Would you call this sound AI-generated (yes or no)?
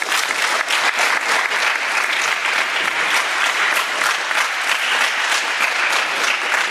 no